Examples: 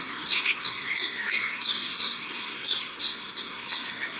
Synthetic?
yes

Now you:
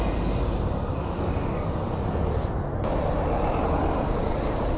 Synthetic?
no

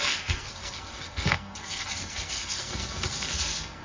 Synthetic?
yes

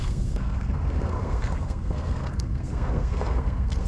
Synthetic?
yes